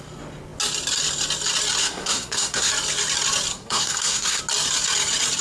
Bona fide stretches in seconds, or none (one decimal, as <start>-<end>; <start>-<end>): 0.0-1.8; 2.7-3.5; 4.4-5.4